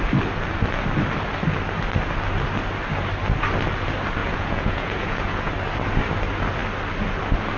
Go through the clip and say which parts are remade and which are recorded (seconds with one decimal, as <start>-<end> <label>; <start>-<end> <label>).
0.0-4.2 recorded; 4.2-5.5 remade; 5.5-7.6 recorded